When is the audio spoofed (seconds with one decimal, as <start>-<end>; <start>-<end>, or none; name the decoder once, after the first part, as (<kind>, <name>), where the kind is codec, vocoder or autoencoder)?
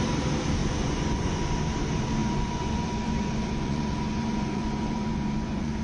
0.6-1.4 (vocoder, Vocos); 2.2-5.8